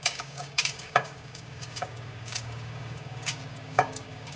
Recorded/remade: remade